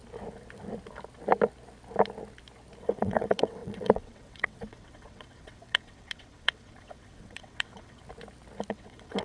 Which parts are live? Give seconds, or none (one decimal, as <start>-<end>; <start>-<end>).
0.0-2.8; 8.0-8.7